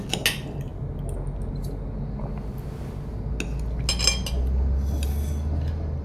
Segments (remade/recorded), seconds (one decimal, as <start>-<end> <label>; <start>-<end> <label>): 0.0-6.0 recorded

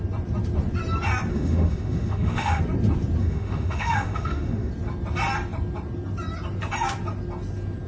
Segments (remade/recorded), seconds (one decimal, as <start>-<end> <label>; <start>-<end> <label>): 0.0-1.3 recorded; 1.3-2.6 remade; 2.6-3.2 recorded; 3.2-4.7 remade; 4.7-7.9 recorded

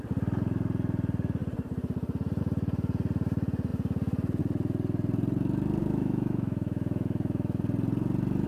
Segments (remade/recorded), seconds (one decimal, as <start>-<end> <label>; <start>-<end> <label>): 0.0-5.8 recorded; 5.8-7.6 remade; 7.6-8.5 recorded

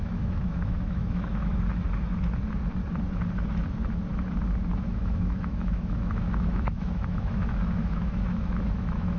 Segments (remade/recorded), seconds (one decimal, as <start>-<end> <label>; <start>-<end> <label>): 0.0-1.5 remade; 1.5-4.8 recorded; 4.8-9.2 remade

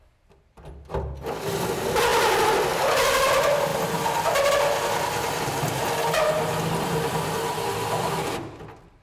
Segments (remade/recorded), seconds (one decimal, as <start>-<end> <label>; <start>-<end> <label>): 0.0-9.0 recorded